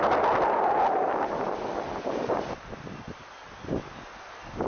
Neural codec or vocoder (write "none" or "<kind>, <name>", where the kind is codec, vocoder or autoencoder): none